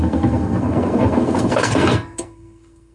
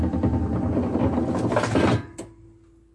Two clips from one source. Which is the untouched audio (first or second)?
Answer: second